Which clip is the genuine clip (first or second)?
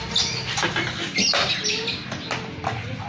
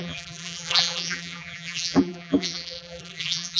first